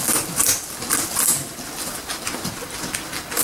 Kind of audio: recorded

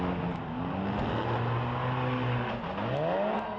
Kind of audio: recorded